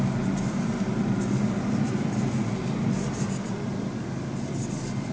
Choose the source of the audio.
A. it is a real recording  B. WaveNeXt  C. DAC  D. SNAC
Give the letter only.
A